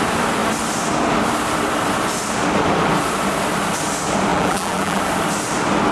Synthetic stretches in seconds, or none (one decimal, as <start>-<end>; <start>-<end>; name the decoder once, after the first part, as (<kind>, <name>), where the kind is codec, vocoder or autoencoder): 4.3-5.0 (vocoder, BigVGAN v2)